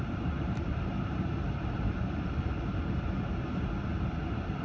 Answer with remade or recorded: recorded